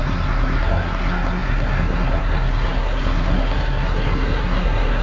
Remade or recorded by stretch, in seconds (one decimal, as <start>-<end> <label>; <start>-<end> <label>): 0.0-5.0 remade